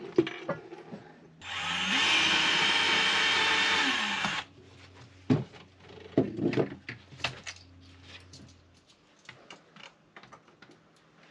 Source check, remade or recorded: recorded